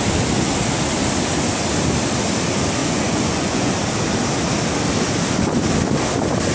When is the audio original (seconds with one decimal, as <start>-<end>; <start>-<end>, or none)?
0.0-2.8; 3.7-6.5